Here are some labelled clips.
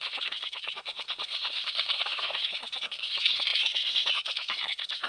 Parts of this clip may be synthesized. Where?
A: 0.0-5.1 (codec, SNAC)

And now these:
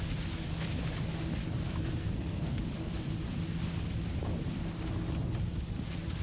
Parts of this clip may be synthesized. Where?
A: 2.0-2.6 (codec, SNAC)

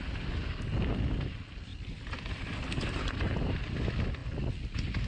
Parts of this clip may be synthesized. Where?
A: none

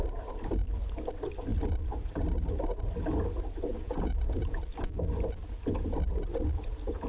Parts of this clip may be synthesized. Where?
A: 3.7-4.6 (vocoder, Vocos)

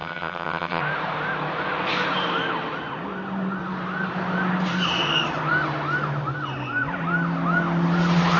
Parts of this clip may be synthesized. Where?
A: 0.0-0.8 (vocoder, HiFi-GAN)

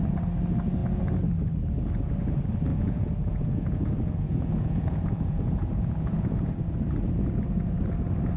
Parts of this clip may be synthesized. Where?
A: 2.7-6.5 (vocoder, Vocos)

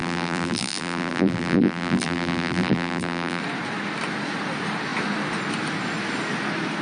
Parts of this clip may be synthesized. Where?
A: 0.0-3.4 (vocoder, BigVGAN v2)